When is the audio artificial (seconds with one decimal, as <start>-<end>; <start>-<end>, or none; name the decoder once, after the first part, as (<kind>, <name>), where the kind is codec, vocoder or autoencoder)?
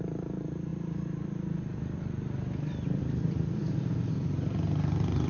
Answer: 0.0-5.3 (vocoder, BigVGAN v2)